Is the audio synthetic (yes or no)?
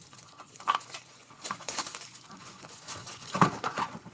yes